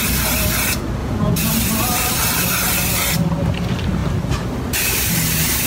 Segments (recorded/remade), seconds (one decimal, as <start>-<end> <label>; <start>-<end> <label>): 0.0-1.0 recorded; 1.0-1.5 remade; 1.5-5.7 recorded